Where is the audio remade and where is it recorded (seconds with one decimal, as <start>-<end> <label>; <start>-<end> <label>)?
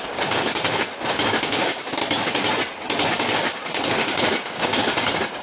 0.0-2.0 remade; 2.0-3.1 recorded; 3.1-5.4 remade